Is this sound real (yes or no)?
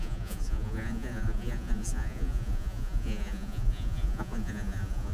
no